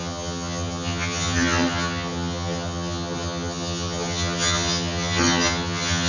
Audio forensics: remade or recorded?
remade